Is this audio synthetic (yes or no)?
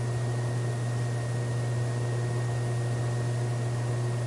no